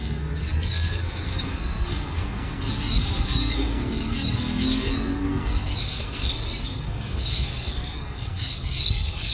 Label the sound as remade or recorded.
remade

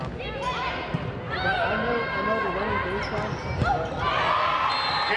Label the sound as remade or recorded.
recorded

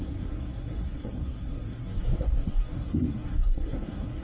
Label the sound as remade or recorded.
remade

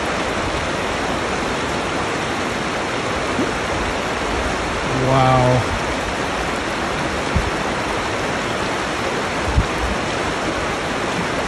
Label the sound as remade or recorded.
recorded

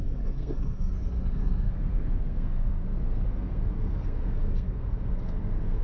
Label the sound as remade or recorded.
remade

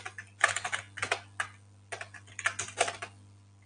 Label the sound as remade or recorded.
recorded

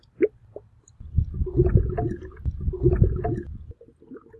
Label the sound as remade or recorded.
recorded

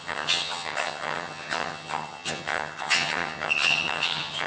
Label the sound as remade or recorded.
remade